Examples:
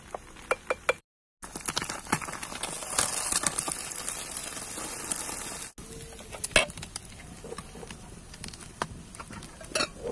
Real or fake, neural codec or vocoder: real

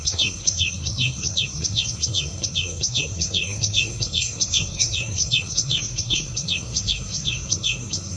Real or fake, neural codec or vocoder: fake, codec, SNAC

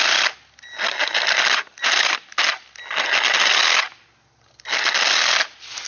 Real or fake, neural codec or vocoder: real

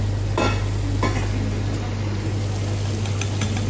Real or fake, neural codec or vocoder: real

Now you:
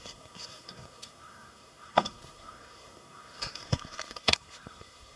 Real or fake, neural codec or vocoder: fake, codec, SNAC